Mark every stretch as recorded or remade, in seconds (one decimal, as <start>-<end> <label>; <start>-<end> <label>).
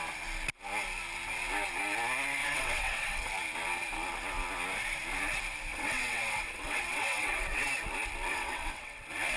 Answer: 0.0-2.4 recorded; 2.4-3.3 remade; 3.3-5.7 recorded; 5.7-7.7 remade; 7.7-8.3 recorded; 8.3-9.0 remade; 9.0-9.4 recorded